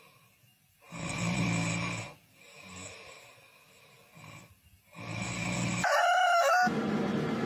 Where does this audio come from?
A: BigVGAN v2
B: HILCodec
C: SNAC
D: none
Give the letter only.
D